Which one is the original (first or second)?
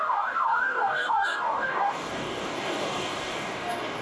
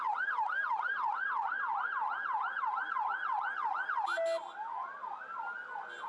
second